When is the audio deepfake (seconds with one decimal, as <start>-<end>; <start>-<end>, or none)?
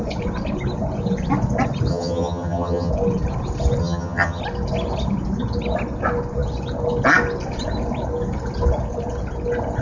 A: 1.9-2.9; 3.8-4.4